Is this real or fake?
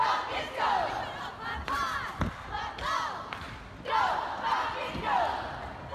real